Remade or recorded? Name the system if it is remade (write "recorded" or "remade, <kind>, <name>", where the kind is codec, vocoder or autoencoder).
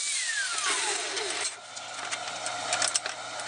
recorded